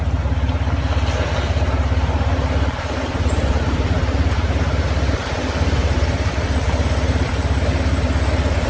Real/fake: real